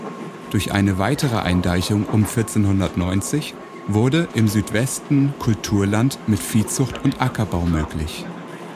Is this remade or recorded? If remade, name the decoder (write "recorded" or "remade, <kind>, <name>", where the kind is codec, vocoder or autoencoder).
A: remade, vocoder, BigVGAN v2